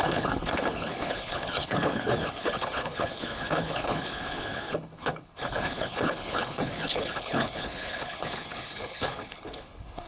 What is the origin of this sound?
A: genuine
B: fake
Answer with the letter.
B